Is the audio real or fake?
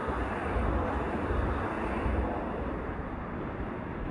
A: real